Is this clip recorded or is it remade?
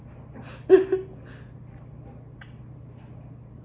recorded